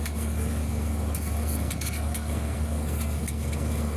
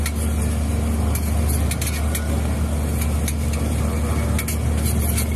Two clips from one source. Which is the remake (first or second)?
first